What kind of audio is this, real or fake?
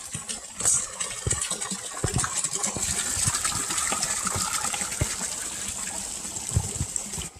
real